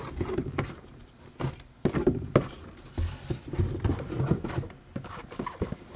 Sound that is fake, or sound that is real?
fake